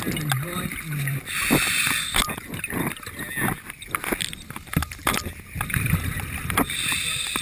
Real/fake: real